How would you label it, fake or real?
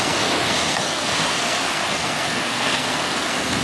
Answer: fake